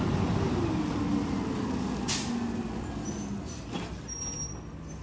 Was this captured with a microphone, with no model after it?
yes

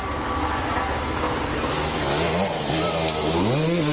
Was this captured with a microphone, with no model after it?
yes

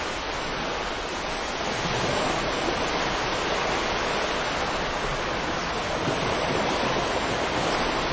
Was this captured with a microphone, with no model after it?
yes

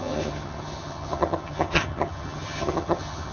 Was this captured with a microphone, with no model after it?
no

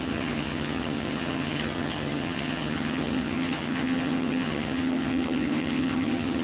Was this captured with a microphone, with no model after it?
no